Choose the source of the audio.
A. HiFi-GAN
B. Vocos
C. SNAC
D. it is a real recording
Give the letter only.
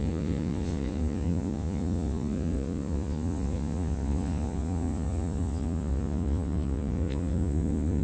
B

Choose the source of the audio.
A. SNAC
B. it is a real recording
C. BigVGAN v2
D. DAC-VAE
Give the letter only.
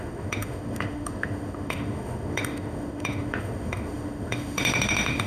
D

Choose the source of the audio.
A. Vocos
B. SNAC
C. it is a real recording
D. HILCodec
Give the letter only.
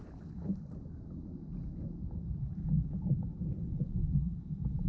C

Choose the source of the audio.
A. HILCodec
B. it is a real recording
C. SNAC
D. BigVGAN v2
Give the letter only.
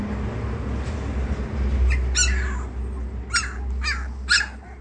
B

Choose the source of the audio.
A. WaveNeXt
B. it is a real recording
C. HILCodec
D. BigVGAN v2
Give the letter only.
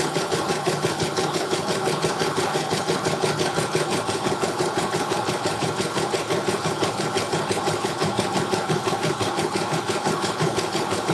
C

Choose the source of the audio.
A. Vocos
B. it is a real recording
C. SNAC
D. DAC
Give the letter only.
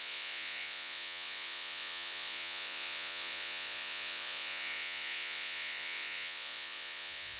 A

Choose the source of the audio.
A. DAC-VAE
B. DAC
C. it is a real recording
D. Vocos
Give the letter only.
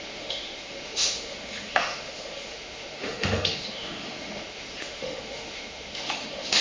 A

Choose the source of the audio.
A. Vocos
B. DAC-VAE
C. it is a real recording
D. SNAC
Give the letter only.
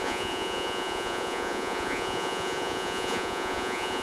A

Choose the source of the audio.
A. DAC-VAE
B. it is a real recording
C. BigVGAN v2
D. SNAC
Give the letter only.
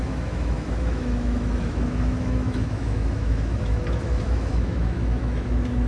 A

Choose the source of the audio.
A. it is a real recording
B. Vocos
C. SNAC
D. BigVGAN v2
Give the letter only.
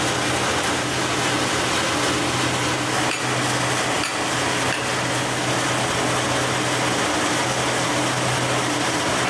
A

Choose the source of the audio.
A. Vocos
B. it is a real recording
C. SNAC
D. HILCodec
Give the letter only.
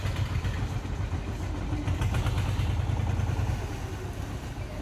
B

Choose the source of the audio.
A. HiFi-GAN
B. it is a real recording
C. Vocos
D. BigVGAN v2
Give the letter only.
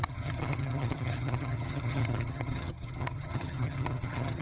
A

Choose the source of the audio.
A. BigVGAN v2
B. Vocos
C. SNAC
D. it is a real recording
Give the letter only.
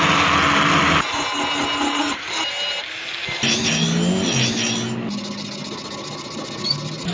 D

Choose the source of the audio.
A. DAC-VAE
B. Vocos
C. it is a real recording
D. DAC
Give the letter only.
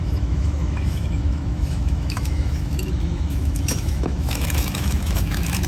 A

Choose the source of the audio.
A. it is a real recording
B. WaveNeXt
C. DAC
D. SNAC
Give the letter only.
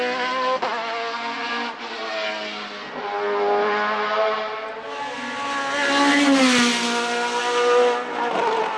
A